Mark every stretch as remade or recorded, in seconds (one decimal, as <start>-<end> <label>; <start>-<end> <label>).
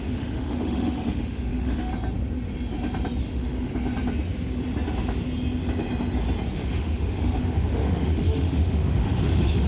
0.0-1.9 remade; 1.9-3.2 recorded; 3.2-3.7 remade; 3.7-6.5 recorded; 6.5-9.7 remade